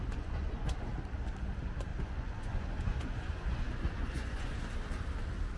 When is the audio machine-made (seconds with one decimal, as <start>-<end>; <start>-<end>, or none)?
0.0-0.9; 1.9-4.6